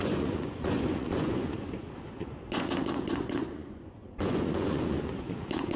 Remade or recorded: remade